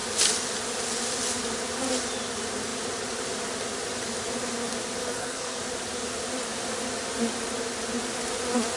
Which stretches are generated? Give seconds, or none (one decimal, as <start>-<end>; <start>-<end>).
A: 5.0-5.6